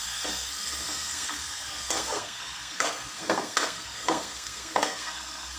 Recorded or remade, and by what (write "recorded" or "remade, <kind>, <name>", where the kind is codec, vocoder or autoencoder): remade, codec, SNAC